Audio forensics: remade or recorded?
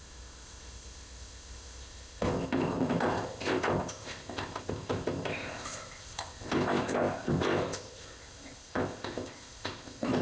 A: remade